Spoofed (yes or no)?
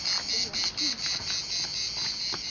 no